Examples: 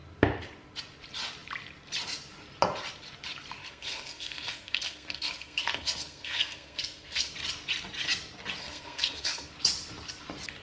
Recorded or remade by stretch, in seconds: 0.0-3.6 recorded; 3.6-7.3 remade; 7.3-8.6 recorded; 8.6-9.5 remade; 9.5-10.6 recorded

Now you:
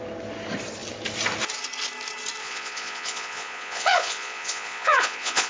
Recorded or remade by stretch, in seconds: 0.0-2.4 recorded; 2.4-5.5 remade